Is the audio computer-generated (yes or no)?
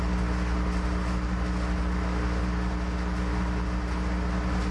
no